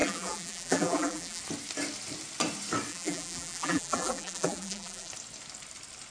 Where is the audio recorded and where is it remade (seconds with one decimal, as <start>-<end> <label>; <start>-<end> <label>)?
0.0-1.4 remade; 1.4-2.9 recorded; 2.9-5.1 remade; 5.1-6.1 recorded

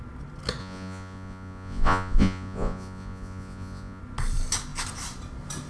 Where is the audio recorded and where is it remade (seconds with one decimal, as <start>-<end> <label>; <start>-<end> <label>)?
0.0-0.6 recorded; 0.6-4.0 remade; 4.0-5.7 recorded